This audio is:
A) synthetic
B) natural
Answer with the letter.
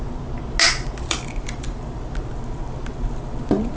B